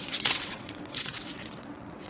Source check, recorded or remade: remade